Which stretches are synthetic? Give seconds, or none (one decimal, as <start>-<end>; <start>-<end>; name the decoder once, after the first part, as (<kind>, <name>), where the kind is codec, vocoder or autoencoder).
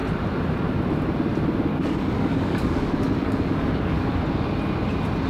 1.7-4.2 (codec, DAC)